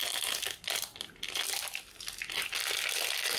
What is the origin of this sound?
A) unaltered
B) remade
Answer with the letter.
A